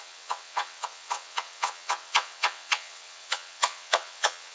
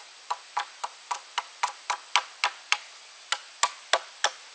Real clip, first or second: second